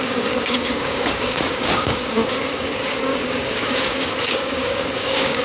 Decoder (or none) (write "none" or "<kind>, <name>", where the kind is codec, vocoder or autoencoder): codec, DAC